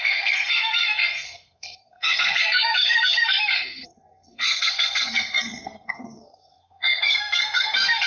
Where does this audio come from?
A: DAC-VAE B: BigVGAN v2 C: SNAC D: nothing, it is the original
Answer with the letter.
C